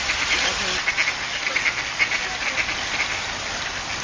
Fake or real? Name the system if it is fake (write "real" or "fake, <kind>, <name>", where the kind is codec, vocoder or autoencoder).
real